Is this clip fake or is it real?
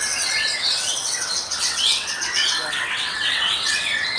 fake